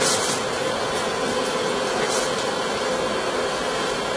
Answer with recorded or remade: recorded